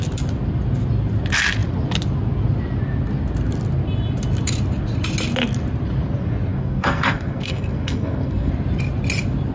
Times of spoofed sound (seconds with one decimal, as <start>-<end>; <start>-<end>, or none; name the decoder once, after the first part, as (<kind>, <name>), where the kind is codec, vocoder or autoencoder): 6.5-8.5 (codec, SNAC)